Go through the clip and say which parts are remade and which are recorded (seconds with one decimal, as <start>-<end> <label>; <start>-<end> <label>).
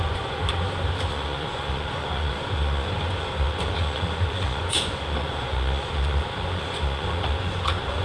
0.0-0.4 remade; 0.4-1.1 recorded; 1.1-8.0 remade